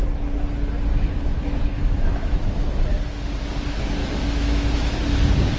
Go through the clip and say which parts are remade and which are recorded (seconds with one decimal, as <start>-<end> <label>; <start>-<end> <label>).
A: 0.0-0.9 recorded; 0.9-2.8 remade; 2.8-4.0 recorded; 4.0-4.7 remade; 4.7-5.6 recorded